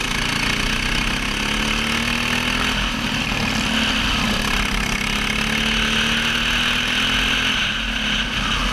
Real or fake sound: real